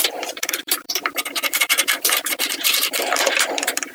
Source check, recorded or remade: remade